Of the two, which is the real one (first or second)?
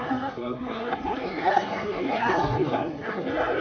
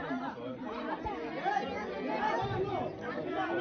second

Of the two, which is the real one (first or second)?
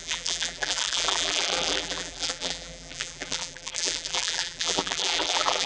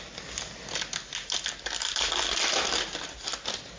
second